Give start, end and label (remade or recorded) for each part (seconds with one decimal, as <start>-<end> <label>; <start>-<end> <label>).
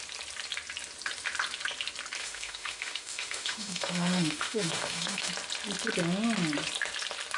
0.0-2.2 recorded; 2.2-5.3 remade; 5.3-7.4 recorded